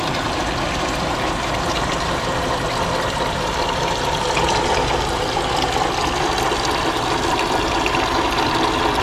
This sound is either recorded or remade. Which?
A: recorded